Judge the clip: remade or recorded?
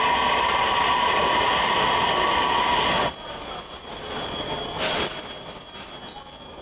recorded